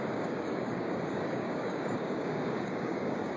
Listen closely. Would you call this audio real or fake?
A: fake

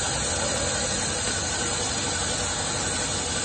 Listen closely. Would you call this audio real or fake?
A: real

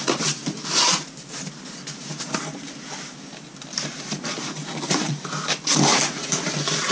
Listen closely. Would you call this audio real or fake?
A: real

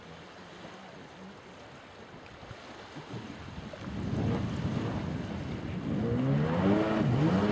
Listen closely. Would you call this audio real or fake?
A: real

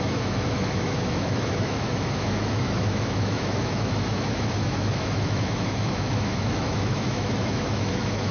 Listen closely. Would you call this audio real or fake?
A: fake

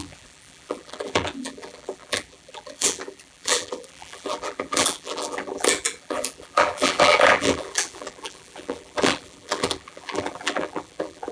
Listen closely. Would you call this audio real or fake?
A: fake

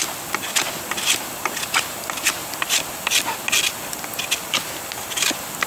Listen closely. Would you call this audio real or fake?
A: real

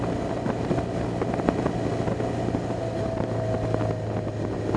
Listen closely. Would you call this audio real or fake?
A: real